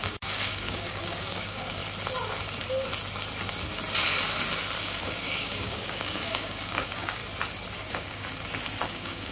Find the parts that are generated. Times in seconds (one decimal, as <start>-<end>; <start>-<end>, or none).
0.0-1.8; 4.8-7.2; 7.9-8.3; 8.8-9.3